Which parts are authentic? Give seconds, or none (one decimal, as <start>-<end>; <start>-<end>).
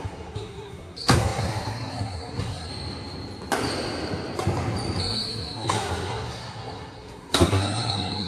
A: 2.7-5.0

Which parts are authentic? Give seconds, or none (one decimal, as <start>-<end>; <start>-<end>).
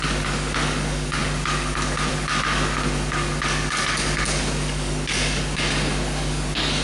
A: none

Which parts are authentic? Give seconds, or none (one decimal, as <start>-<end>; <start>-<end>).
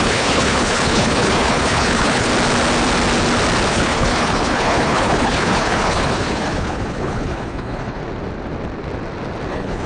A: 2.3-3.7; 8.0-9.5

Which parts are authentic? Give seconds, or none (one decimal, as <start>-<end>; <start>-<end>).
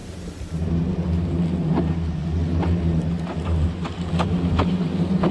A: 0.8-5.3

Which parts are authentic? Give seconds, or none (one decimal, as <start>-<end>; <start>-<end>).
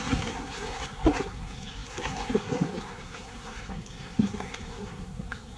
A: none